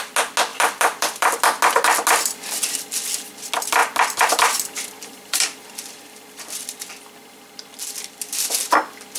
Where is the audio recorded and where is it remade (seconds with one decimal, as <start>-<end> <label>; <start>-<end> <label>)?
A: 0.0-0.5 recorded; 0.5-1.4 remade; 1.4-3.8 recorded; 3.8-8.7 remade; 8.7-9.2 recorded